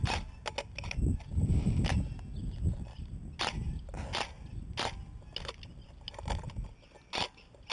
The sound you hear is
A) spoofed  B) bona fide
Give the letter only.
B